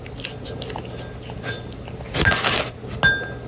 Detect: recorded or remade recorded